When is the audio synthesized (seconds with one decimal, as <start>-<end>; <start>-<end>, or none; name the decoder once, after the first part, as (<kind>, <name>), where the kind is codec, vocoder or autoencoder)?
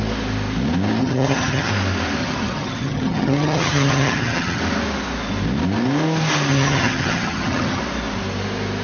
1.0-1.7 (vocoder, HiFi-GAN); 2.2-4.6; 6.5-7.8